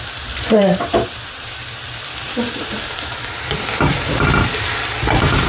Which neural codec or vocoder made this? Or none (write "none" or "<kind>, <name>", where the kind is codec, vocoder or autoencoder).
vocoder, BigVGAN v2